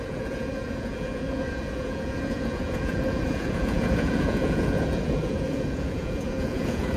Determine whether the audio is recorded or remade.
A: remade